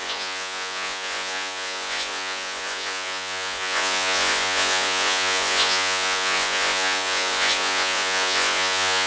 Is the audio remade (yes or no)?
yes